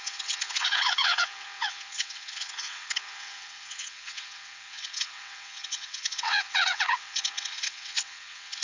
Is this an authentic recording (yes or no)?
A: no